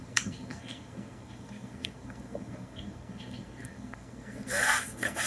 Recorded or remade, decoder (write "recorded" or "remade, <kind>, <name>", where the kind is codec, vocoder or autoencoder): remade, codec, SNAC